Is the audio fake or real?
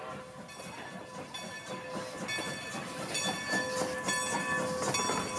real